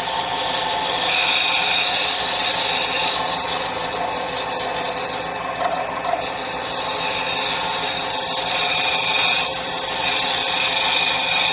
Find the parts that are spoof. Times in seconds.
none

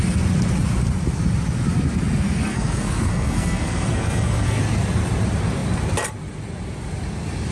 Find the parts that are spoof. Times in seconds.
2.5-4.6

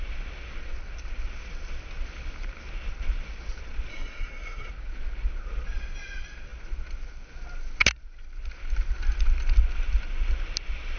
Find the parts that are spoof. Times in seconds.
3.9-4.7

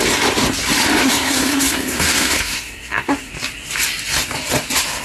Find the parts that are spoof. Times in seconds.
1.0-3.3